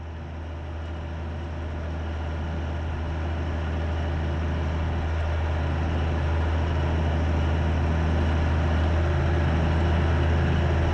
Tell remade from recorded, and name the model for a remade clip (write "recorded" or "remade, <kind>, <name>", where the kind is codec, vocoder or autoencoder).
recorded